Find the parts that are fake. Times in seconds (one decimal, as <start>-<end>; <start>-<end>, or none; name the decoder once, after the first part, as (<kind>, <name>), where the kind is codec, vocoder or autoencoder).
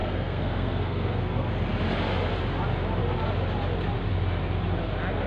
0.0-1.5 (codec, SNAC)